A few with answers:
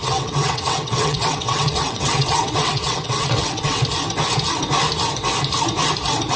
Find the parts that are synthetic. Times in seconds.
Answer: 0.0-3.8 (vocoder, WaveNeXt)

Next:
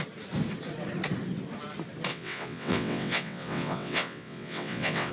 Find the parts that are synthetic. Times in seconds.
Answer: 2.1-5.1 (vocoder, WaveNeXt)

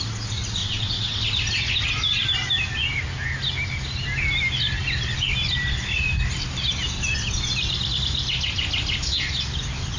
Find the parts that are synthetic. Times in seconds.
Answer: 0.6-1.2 (vocoder, WaveNeXt)

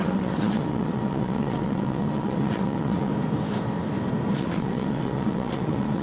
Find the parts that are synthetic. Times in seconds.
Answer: 0.0-3.1 (vocoder, WaveNeXt); 4.3-6.0

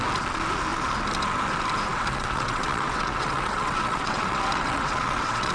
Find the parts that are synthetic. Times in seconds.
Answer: 1.9-5.5 (vocoder, WaveNeXt)

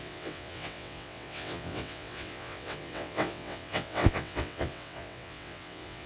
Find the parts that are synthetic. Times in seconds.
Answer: 0.0-6.1 (vocoder, WaveNeXt)

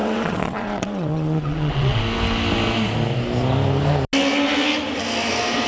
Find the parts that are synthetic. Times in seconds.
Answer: 0.0-2.0 (vocoder, WaveNeXt)